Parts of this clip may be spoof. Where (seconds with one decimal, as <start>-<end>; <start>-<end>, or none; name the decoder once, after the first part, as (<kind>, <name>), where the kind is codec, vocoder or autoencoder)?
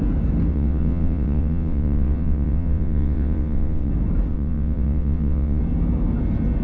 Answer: 0.5-3.9 (vocoder, WaveNeXt); 4.3-5.6